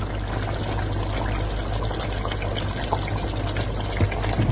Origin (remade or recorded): recorded